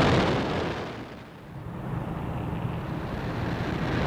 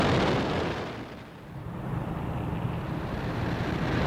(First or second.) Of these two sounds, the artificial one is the second